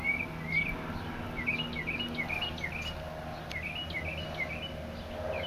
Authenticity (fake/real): real